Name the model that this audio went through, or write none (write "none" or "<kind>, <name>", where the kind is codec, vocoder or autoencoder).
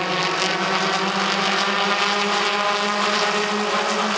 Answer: none